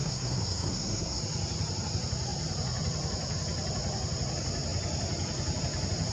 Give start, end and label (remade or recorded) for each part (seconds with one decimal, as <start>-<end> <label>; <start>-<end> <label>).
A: 0.0-1.2 remade; 1.2-6.1 recorded